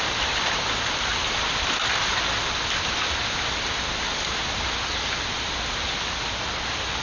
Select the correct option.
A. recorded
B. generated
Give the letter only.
A